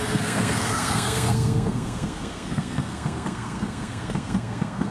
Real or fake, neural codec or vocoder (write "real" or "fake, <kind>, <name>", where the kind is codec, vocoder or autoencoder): fake, codec, SNAC